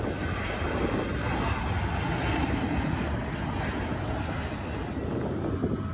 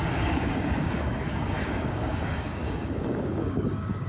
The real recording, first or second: first